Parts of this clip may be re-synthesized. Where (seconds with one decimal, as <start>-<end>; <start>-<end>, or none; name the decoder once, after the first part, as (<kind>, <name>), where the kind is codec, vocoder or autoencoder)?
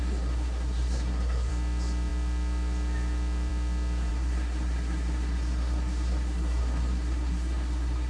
0.0-1.5 (codec, SNAC); 4.1-8.1